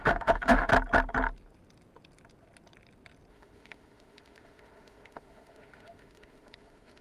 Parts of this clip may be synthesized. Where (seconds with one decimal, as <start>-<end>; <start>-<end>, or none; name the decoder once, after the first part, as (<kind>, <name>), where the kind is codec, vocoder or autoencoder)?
0.0-0.7 (autoencoder, DAC-VAE); 3.3-7.0